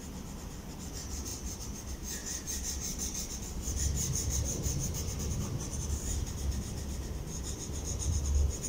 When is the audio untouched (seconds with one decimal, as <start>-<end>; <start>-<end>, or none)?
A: none